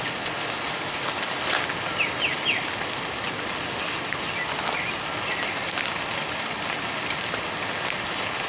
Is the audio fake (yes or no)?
no